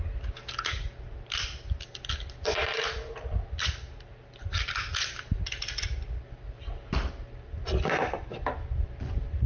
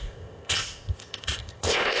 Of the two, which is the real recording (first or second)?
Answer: first